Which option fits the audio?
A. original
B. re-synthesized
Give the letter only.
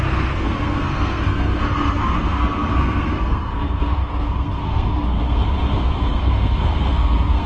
B